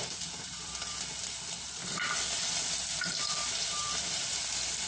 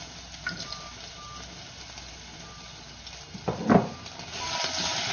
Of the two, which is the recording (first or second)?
second